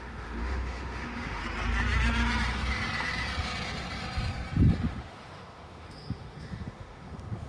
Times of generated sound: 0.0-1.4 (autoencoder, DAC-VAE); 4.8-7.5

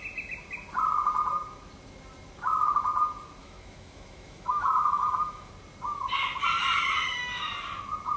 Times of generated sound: 3.4-5.5 (autoencoder, DAC-VAE)